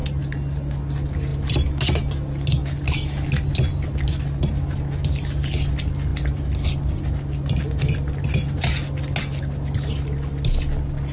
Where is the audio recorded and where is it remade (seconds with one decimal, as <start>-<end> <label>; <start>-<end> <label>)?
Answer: 0.0-11.1 recorded